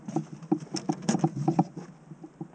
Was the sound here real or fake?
real